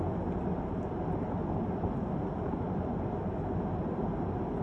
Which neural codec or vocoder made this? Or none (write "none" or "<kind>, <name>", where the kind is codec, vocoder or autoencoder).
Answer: none